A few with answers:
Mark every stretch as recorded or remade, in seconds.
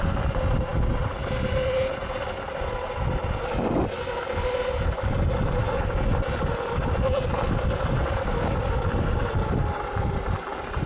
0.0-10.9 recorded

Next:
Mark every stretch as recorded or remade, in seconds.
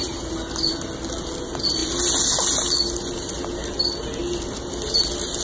0.0-5.4 recorded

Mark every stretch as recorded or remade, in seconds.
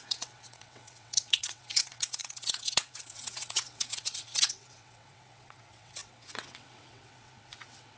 0.0-8.0 remade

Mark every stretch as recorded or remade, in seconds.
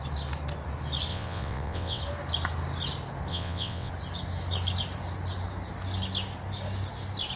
0.0-1.1 recorded; 1.1-2.0 remade; 2.0-3.3 recorded; 3.3-3.9 remade; 3.9-7.4 recorded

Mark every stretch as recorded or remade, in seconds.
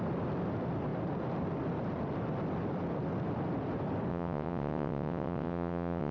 0.0-4.1 recorded; 4.1-6.1 remade